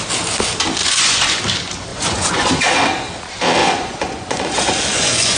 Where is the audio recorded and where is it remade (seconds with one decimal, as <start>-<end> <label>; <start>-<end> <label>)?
0.0-0.8 recorded; 0.8-1.4 remade; 1.4-1.9 recorded; 1.9-2.5 remade; 2.5-3.6 recorded; 3.6-5.4 remade